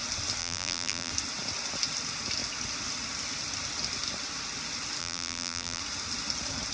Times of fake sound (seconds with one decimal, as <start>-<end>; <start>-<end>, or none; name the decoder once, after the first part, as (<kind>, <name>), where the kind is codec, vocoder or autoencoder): 0.4-1.1 (vocoder, BigVGAN v2); 5.0-5.8